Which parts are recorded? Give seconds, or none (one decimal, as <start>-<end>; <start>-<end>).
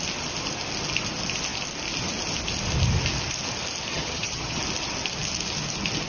0.0-3.9; 4.6-6.1